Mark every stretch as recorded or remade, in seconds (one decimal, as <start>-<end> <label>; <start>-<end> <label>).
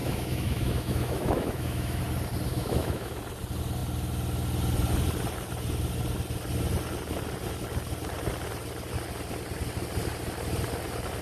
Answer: 0.0-2.0 remade; 2.0-2.5 recorded; 2.5-3.2 remade; 3.2-11.2 recorded